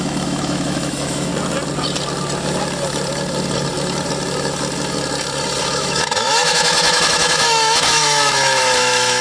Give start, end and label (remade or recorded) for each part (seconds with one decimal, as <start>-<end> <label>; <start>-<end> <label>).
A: 0.0-1.3 remade; 1.3-5.6 recorded; 5.6-9.2 remade